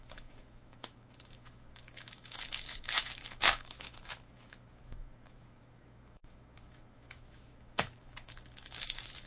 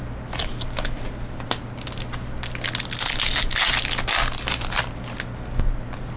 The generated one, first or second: first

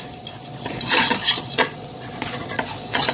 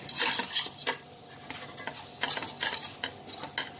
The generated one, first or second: first